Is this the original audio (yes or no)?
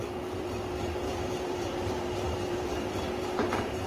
no